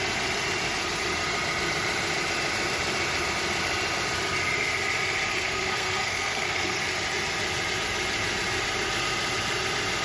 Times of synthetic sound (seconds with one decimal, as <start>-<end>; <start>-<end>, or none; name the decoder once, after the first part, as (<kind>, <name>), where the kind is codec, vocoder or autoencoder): 5.3-6.8 (codec, SNAC)